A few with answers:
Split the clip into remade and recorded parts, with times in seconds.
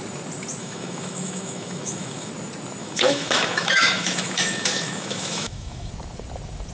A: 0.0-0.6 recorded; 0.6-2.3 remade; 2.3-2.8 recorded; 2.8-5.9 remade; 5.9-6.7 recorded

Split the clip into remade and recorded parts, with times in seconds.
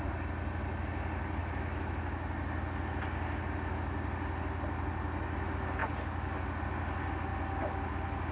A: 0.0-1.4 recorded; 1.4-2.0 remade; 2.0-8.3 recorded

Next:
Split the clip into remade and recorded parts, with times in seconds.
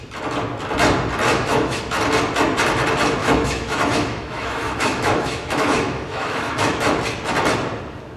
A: 0.0-1.3 recorded; 1.3-1.8 remade; 1.8-3.2 recorded; 3.2-7.0 remade; 7.0-8.2 recorded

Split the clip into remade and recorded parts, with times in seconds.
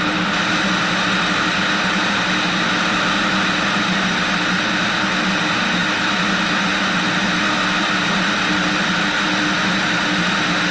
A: 0.0-10.7 recorded